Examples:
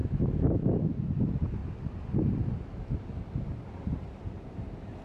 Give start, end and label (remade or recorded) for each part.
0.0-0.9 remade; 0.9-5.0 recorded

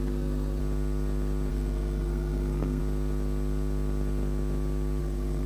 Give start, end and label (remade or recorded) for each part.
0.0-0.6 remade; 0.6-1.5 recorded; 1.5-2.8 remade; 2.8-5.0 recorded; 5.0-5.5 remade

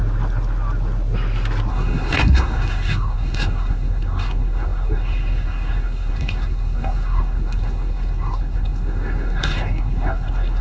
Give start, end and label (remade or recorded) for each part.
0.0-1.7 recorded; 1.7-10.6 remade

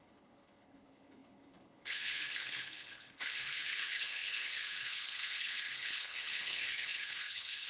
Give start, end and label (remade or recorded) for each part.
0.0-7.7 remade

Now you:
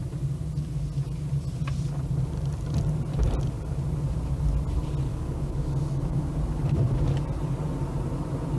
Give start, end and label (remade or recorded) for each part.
0.0-5.1 recorded; 5.1-6.2 remade; 6.2-8.6 recorded

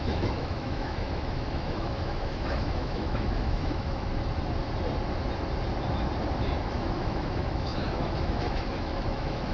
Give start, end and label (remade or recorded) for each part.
0.0-4.1 remade; 4.1-6.7 recorded; 6.7-9.5 remade

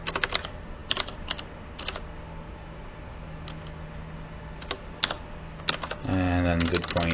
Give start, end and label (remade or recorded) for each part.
0.0-7.1 recorded

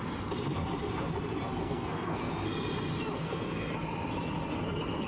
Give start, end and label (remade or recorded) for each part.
0.0-1.6 recorded; 1.6-2.3 remade; 2.3-3.2 recorded; 3.2-3.7 remade; 3.7-5.1 recorded